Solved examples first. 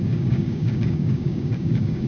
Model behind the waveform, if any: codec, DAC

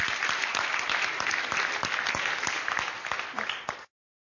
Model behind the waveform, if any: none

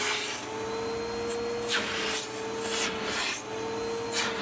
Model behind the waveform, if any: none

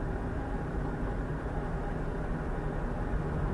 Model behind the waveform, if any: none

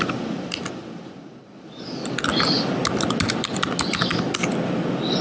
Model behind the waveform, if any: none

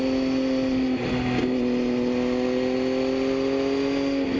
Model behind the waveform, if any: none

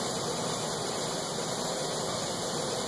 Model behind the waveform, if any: none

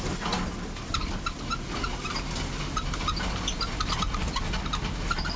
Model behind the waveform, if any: none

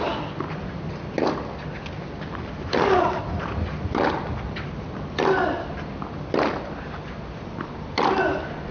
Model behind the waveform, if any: none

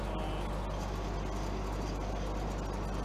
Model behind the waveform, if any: none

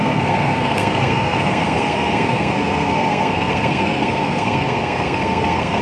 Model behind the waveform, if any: codec, SNAC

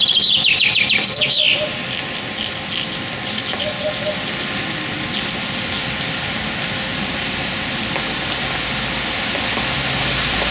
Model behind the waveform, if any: none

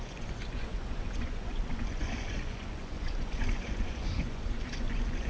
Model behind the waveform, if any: vocoder, Vocos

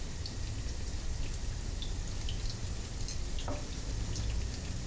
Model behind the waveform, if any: none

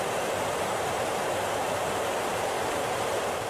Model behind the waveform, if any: vocoder, BigVGAN v2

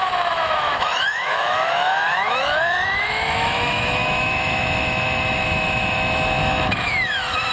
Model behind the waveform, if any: autoencoder, DAC-VAE